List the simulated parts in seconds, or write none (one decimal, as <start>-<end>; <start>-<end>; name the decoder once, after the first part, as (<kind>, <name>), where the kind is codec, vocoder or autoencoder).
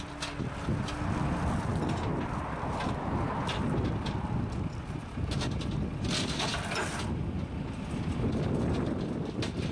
none